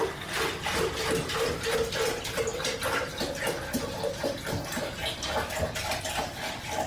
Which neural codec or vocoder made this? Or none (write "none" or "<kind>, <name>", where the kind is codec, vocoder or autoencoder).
none